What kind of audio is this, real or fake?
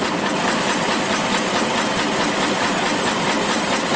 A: real